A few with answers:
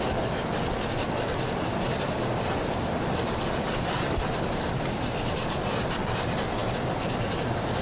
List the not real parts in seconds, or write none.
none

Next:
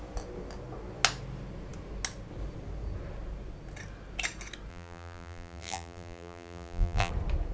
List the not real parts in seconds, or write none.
4.7-7.1 (vocoder, BigVGAN v2)

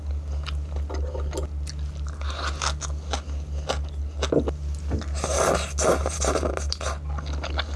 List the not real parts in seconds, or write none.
6.0-6.5 (vocoder, BigVGAN v2)

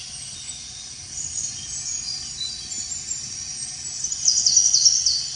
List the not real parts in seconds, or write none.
none

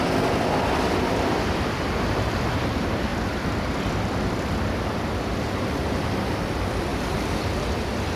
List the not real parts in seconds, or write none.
0.0-8.2 (vocoder, BigVGAN v2)

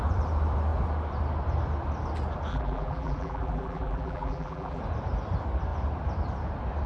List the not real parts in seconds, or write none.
2.5-4.8 (vocoder, BigVGAN v2)

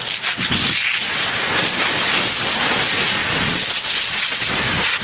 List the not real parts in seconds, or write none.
none